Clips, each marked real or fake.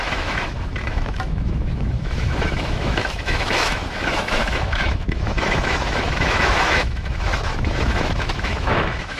fake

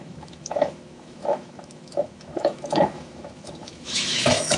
fake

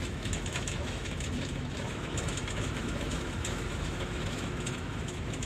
fake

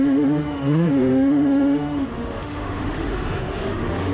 fake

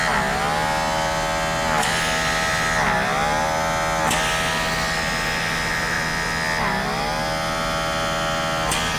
real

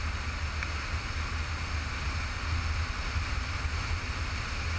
real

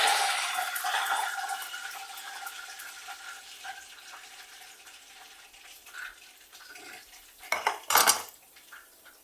real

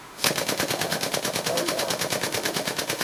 fake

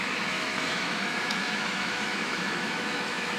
fake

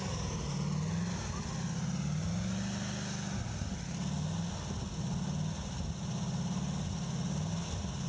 real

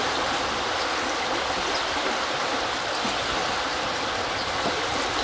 real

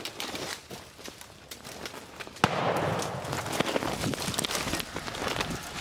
real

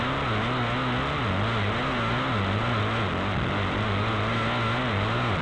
real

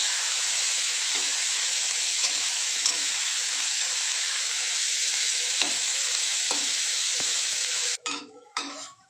fake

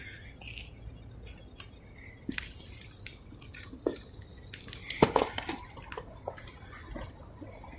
real